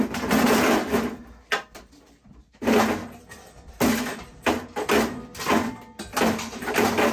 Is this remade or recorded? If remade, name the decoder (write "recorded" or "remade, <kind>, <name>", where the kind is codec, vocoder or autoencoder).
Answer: recorded